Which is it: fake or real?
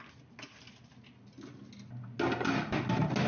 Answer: real